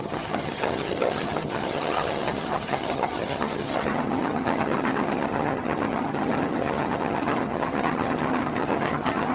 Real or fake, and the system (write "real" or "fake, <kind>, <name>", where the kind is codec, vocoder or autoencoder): fake, vocoder, HiFi-GAN